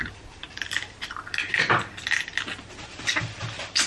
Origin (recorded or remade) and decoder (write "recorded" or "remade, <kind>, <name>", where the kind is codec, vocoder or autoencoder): recorded